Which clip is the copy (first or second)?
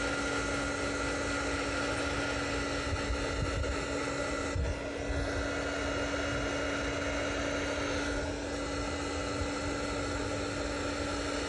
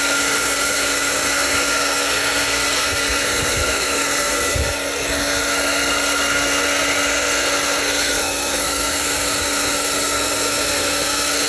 second